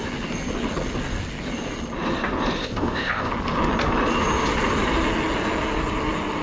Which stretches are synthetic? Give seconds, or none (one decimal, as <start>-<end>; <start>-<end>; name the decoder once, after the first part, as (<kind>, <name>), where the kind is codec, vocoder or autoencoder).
2.6-3.3 (codec, ZipCodec)